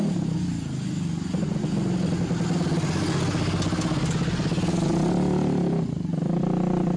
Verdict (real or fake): real